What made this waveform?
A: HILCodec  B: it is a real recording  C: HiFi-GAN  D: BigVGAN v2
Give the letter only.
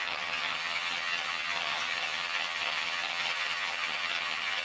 C